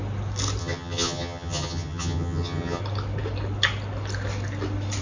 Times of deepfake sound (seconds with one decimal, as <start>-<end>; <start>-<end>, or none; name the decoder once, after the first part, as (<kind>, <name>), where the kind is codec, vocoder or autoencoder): 0.6-2.8 (vocoder, HiFi-GAN)